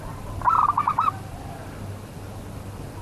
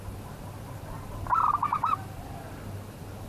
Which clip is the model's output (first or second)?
first